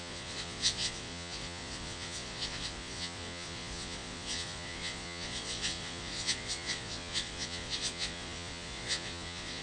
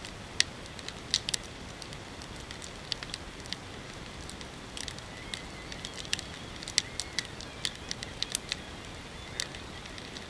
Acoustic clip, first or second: second